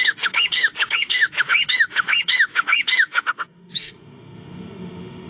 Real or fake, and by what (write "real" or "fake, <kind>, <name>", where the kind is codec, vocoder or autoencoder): fake, autoencoder, DAC-VAE